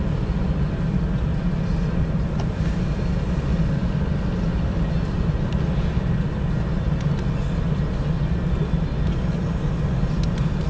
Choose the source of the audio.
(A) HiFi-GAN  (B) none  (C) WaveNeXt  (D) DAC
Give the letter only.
B